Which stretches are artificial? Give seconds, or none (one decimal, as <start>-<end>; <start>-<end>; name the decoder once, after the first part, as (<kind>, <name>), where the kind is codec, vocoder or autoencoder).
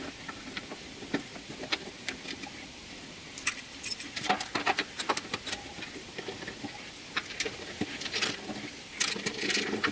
0.0-9.9 (vocoder, BigVGAN v2)